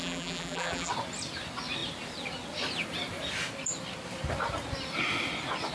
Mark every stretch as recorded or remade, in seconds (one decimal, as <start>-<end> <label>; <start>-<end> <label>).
0.0-0.9 remade; 0.9-5.7 recorded